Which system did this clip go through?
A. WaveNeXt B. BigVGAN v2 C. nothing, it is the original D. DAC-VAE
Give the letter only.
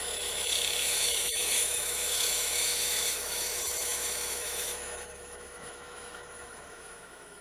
D